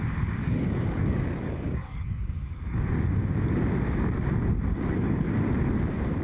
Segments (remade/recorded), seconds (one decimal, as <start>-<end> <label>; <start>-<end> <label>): 0.0-0.4 recorded; 0.4-2.8 remade; 2.8-4.7 recorded; 4.7-5.3 remade; 5.3-6.2 recorded